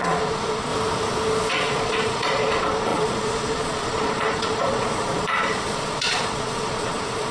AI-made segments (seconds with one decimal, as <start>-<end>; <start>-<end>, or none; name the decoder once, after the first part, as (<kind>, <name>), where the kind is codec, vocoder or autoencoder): 0.0-0.7 (vocoder, Vocos); 1.5-7.3